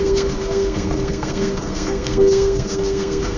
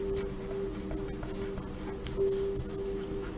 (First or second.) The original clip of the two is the second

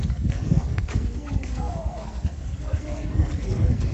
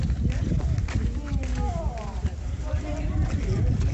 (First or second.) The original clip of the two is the second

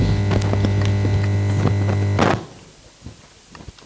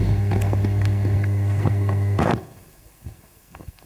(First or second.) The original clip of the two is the first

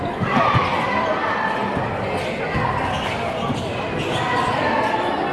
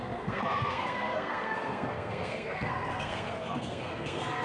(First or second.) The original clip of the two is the first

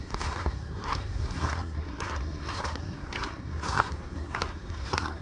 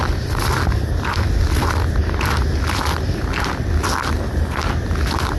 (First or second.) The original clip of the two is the second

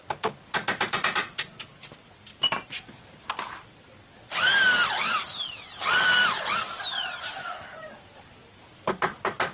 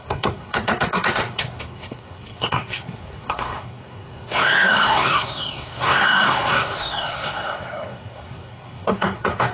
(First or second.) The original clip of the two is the first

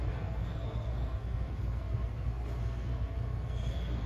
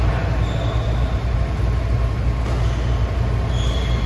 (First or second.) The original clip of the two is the second